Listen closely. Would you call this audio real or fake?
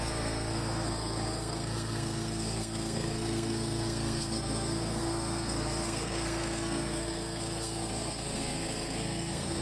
fake